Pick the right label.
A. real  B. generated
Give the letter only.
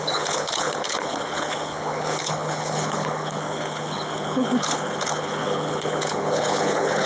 B